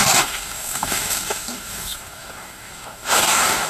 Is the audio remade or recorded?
remade